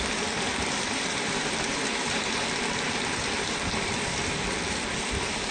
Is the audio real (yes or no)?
no